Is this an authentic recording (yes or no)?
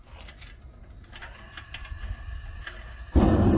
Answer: yes